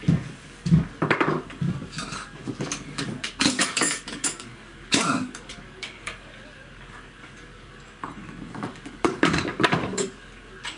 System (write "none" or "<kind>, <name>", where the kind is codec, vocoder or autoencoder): codec, DAC